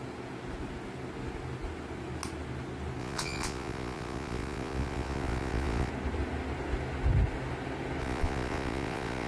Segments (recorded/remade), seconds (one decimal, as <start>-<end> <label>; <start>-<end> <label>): 0.0-3.0 recorded; 3.0-5.9 remade; 5.9-8.0 recorded; 8.0-9.3 remade